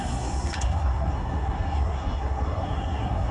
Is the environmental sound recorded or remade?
remade